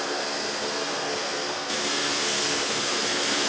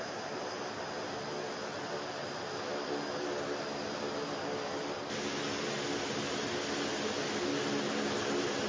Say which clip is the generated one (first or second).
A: first